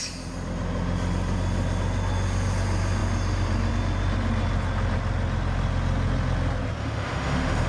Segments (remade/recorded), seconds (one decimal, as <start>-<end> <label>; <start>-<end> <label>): 0.0-6.8 recorded; 6.8-7.7 remade